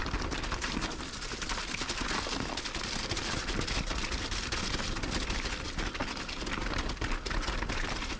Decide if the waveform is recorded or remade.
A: recorded